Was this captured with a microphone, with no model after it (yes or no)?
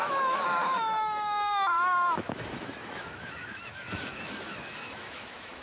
no